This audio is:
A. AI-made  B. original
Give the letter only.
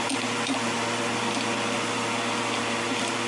B